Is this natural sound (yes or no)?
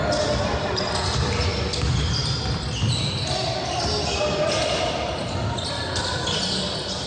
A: yes